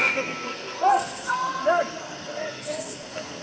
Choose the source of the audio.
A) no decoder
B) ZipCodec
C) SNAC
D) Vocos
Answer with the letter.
C